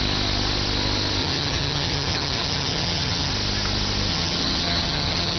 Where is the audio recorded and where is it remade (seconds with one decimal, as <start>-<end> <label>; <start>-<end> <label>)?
0.0-1.2 recorded; 1.2-3.3 remade; 3.3-4.1 recorded; 4.1-5.4 remade